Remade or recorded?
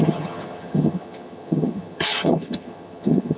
remade